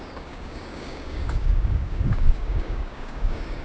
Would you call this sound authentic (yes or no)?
no